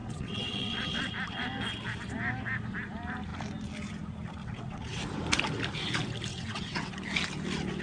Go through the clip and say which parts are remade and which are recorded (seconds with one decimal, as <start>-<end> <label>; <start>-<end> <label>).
0.0-1.1 remade; 1.1-4.4 recorded; 4.4-5.0 remade; 5.0-6.3 recorded; 6.3-6.9 remade; 6.9-7.8 recorded